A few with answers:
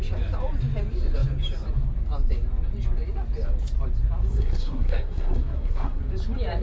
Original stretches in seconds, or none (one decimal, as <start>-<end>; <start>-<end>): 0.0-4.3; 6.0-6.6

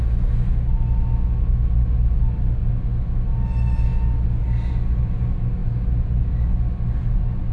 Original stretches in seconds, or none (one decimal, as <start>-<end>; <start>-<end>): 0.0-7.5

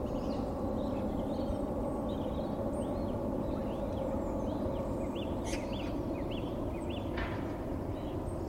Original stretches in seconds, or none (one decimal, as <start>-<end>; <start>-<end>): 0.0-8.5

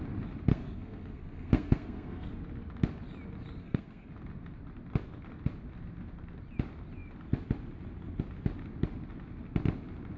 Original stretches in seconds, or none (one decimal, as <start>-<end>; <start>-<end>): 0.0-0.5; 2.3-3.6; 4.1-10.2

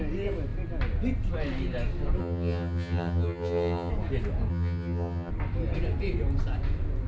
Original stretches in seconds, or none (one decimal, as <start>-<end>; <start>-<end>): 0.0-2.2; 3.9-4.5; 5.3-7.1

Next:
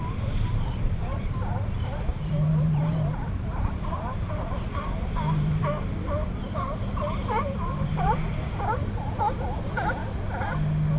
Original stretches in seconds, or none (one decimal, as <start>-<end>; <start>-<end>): 10.0-11.0

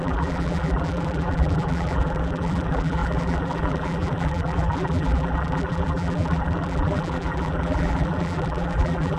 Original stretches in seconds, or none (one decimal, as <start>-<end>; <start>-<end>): none

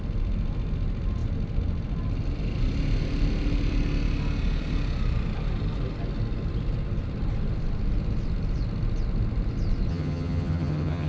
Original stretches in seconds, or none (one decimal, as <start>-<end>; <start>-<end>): 0.0-9.9